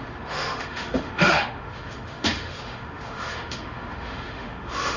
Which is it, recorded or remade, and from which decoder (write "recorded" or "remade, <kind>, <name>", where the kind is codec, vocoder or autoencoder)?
remade, autoencoder, DAC-VAE